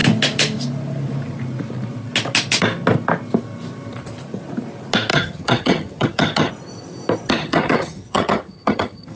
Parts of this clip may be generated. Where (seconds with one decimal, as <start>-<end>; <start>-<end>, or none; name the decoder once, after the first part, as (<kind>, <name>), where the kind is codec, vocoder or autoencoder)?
5.1-6.5 (vocoder, HiFi-GAN); 7.4-9.2